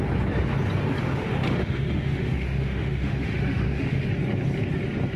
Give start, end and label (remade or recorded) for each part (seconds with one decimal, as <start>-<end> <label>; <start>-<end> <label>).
0.0-1.0 recorded; 1.0-4.1 remade; 4.1-5.2 recorded